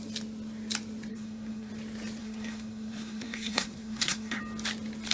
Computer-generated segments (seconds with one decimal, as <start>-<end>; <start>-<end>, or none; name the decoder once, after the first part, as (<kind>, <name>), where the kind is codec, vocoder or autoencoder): 1.1-1.7 (codec, SNAC); 2.2-4.4

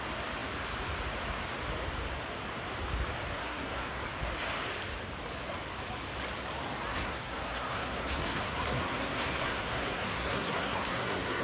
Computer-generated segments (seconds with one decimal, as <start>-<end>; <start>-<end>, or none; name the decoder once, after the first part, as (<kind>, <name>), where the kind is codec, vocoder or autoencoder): 3.4-4.0 (codec, SNAC); 6.9-11.4

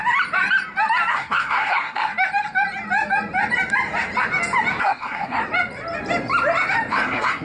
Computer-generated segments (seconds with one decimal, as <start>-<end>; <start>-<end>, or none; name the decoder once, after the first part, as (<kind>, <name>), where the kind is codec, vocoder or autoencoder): 1.1-2.1 (codec, SNAC); 4.8-5.4; 6.9-7.4

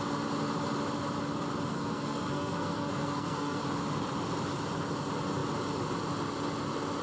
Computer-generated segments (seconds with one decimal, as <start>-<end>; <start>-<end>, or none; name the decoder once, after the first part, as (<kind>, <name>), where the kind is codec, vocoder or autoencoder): 1.7-3.6 (codec, SNAC)